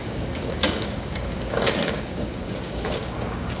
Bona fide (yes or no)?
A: no